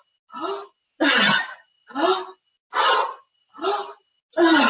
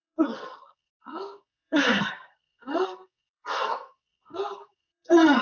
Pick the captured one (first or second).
first